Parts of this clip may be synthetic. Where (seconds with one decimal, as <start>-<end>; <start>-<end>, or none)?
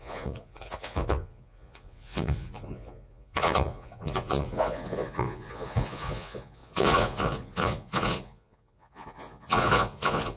0.0-10.4